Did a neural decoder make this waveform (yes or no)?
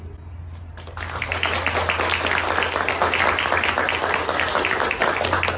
no